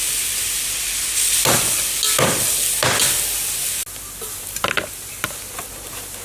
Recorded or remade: recorded